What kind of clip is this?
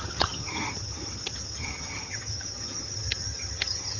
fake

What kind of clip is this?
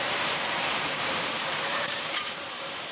fake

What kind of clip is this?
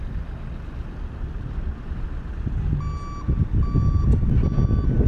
real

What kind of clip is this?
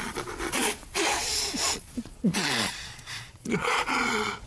fake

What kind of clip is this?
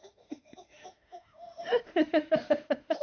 fake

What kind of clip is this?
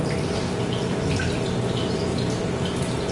real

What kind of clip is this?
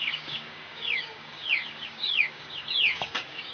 fake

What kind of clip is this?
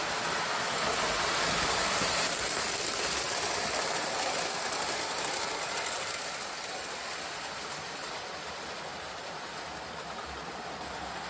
real